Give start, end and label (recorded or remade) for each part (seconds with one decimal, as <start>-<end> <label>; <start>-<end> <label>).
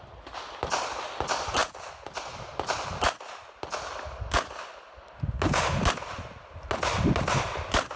0.0-8.0 recorded